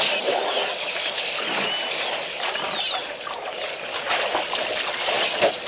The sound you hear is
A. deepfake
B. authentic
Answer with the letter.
B